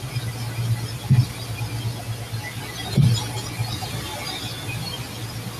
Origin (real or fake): real